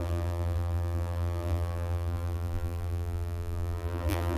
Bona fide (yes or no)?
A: no